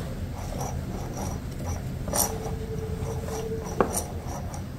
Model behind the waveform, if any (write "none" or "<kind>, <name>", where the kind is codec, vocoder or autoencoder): none